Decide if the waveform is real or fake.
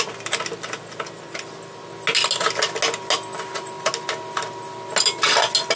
real